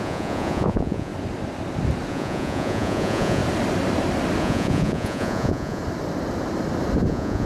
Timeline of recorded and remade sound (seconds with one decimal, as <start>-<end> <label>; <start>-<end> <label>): 0.0-1.1 remade; 1.1-2.1 recorded; 2.1-3.4 remade; 3.4-4.4 recorded; 4.4-5.8 remade; 5.8-7.1 recorded; 7.1-7.5 remade